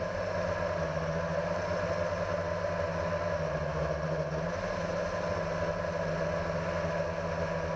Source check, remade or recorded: recorded